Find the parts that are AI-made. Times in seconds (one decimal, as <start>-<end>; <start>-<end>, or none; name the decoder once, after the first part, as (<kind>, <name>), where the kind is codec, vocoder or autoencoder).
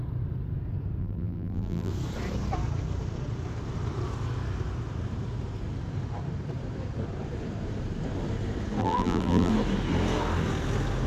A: 1.0-1.9 (vocoder, BigVGAN v2); 8.8-9.5